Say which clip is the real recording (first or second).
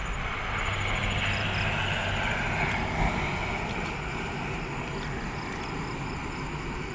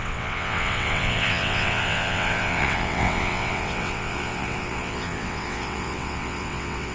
first